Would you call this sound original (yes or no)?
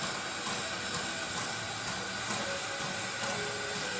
yes